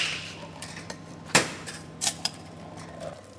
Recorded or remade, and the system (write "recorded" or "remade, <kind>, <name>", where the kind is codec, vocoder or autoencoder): remade, vocoder, BigVGAN v2